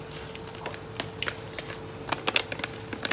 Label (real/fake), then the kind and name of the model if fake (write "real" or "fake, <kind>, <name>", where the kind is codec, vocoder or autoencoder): real